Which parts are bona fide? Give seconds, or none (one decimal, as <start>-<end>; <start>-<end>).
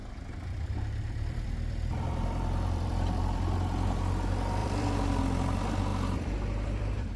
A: 3.2-4.6; 5.2-5.9